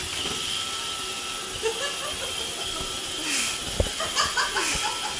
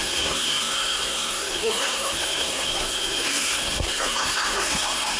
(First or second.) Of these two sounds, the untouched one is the first